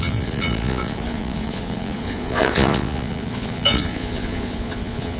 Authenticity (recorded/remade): remade